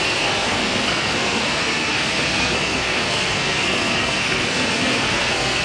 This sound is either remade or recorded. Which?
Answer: remade